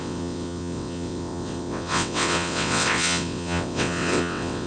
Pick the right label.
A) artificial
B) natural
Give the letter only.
A